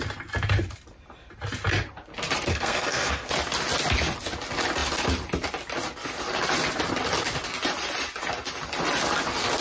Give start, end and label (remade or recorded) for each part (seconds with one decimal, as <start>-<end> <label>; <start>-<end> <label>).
0.0-2.5 recorded; 2.5-3.3 remade; 3.3-9.6 recorded